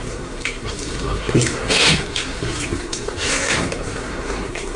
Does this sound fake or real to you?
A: fake